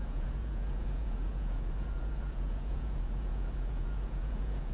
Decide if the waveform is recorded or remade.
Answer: remade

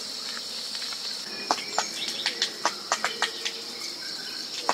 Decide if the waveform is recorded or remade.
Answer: recorded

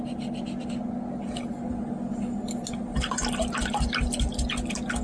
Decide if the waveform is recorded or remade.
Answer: recorded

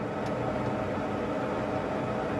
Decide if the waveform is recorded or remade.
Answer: recorded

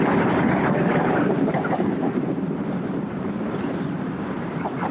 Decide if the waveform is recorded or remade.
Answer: remade